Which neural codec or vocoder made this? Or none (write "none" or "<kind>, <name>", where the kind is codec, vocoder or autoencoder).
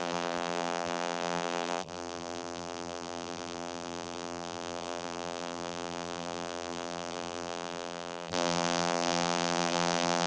vocoder, BigVGAN v2